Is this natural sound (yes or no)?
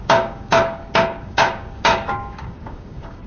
no